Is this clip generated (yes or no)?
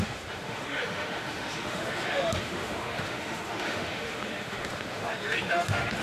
yes